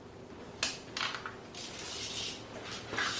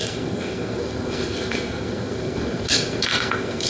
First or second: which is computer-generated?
second